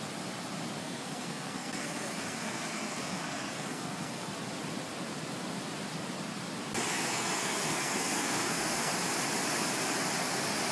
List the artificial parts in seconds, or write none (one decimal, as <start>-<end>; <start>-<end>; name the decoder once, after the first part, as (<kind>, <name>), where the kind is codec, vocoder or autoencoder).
0.8-4.3 (codec, SNAC); 6.9-8.9